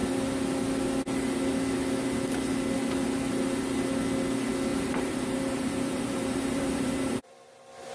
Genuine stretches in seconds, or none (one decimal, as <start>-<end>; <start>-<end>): 0.0-4.7; 7.3-7.9